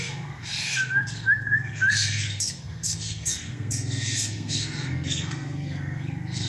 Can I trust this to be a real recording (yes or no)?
no